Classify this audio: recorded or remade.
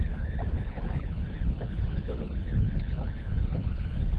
remade